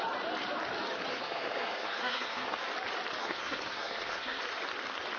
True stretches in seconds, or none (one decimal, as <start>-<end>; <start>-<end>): 0.0-1.1; 2.6-3.2; 4.4-5.2